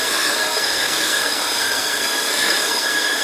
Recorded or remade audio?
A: remade